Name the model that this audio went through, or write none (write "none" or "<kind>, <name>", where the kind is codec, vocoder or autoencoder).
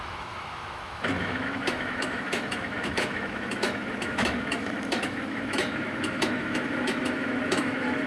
autoencoder, DAC-VAE